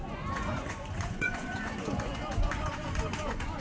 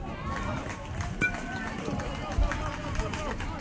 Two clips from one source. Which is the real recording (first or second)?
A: second